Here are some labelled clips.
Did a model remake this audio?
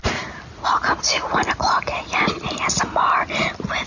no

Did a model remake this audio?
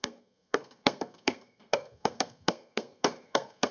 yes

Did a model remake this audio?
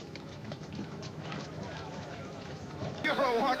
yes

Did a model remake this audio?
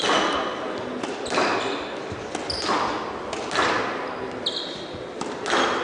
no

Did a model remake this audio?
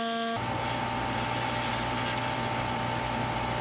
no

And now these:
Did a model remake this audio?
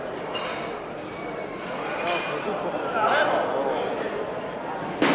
no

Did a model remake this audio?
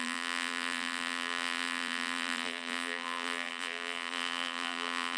yes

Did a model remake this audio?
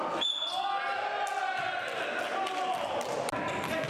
no